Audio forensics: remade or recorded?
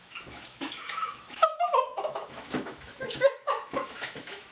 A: remade